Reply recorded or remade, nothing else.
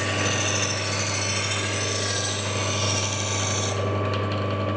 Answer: recorded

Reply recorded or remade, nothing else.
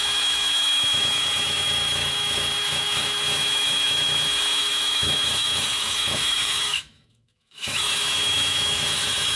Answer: remade